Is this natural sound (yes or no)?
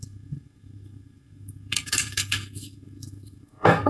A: no